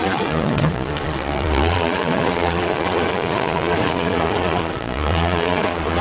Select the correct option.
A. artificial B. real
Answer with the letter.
A